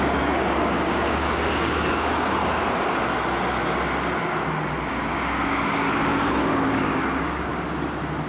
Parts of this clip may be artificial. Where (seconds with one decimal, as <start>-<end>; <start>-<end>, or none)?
0.0-2.4; 4.9-7.5

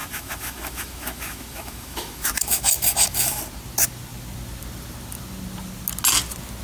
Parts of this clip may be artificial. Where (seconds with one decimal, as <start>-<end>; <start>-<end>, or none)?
0.0-3.4

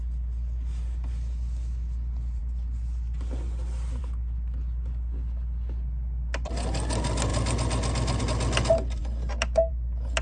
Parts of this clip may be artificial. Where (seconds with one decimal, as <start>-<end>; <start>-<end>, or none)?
none

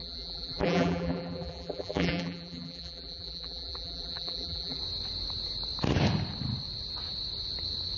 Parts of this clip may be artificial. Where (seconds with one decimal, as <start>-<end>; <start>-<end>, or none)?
0.0-4.8